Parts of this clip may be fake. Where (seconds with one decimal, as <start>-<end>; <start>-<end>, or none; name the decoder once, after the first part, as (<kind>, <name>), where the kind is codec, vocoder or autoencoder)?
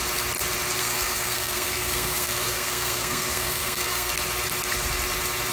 0.8-4.1 (codec, SNAC)